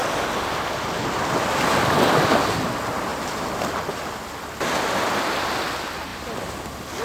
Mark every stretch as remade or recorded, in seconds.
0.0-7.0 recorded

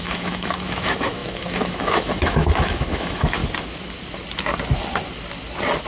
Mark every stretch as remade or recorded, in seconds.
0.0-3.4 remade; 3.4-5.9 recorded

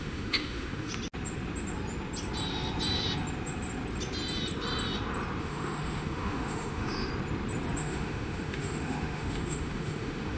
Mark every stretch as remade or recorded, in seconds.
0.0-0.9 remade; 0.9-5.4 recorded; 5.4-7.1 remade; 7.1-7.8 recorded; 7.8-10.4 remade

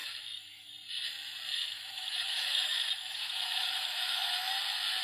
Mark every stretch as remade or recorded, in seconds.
0.0-0.7 remade; 0.7-1.5 recorded; 1.5-4.5 remade; 4.5-5.0 recorded

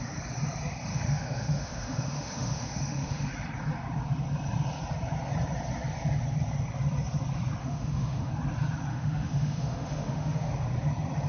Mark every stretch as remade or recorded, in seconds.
0.0-0.9 recorded; 0.9-3.3 remade; 3.3-7.6 recorded; 7.6-8.3 remade; 8.3-8.9 recorded; 8.9-10.5 remade; 10.5-11.3 recorded